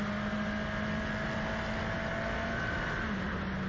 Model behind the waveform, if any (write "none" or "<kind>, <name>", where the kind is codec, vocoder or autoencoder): none